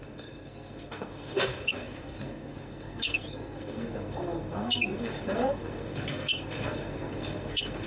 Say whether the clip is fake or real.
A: fake